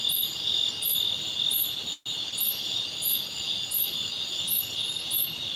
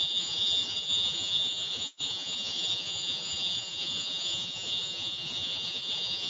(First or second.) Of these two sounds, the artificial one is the second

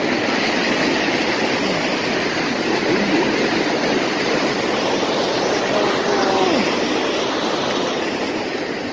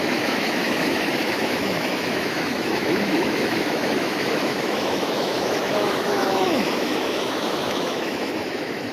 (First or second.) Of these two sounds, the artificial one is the second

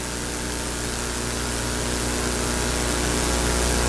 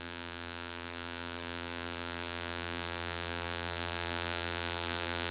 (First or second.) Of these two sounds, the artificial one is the second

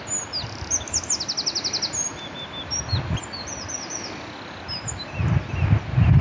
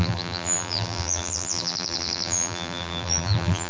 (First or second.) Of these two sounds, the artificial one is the second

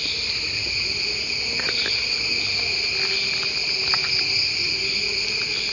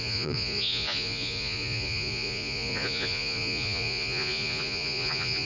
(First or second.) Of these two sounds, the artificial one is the second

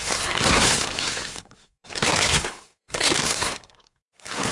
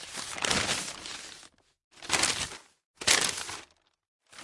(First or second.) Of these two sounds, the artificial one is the first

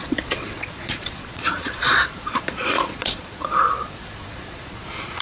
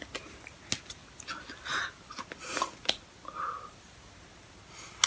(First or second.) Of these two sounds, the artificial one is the first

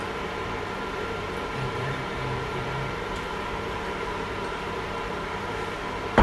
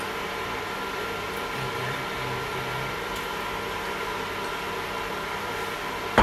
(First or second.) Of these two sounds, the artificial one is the first